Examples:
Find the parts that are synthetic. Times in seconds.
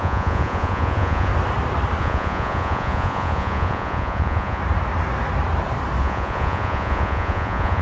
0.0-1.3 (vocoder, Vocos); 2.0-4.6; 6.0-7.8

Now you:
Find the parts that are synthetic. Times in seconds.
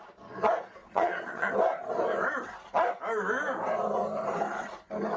0.8-1.5 (vocoder, Vocos)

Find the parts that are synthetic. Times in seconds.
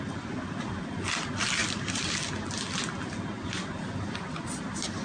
none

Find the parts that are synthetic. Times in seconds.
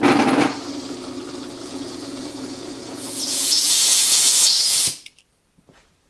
1.6-4.8 (vocoder, Vocos)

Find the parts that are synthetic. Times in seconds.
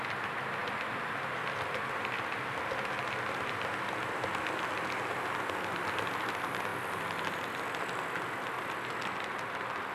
none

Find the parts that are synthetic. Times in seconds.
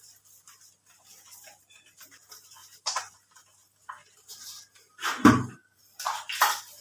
none